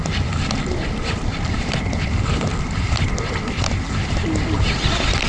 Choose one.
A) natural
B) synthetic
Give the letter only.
A